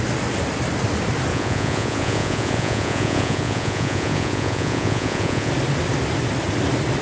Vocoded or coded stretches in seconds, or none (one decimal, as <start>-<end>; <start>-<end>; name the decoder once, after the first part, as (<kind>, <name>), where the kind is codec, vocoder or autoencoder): 1.3-5.5 (vocoder, Vocos)